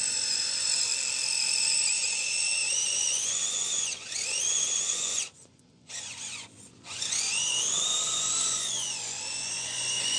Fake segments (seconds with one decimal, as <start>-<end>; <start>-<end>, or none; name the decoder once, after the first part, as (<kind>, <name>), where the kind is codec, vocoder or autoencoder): 0.0-0.9 (vocoder, Vocos); 1.6-10.2